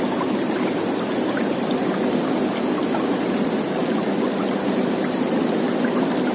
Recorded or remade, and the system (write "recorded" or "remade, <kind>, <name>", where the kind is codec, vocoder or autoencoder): recorded